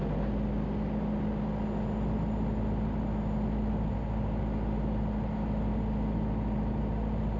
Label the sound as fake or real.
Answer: real